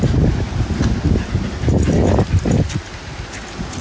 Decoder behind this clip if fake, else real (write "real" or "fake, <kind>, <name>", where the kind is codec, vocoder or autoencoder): real